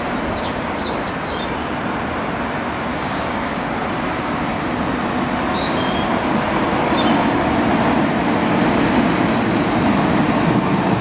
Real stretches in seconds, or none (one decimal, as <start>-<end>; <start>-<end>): 0.0-2.9; 3.7-11.0